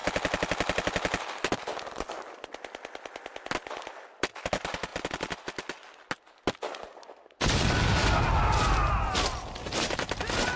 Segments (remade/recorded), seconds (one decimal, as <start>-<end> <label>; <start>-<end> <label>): 0.0-10.6 recorded